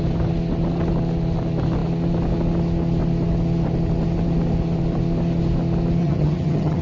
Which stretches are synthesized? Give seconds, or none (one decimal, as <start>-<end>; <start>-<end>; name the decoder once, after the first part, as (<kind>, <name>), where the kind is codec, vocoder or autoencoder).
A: 6.0-6.8 (vocoder, HiFi-GAN)